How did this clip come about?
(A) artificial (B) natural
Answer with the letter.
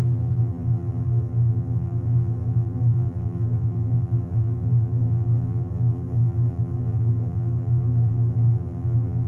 A